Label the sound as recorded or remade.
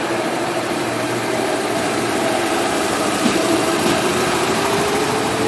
remade